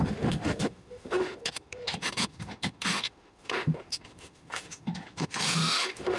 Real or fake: fake